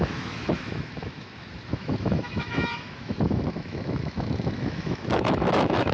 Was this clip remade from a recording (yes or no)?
yes